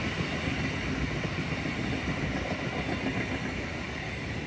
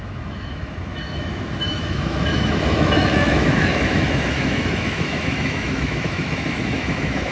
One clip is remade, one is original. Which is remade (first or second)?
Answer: second